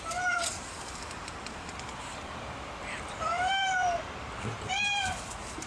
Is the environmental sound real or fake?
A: fake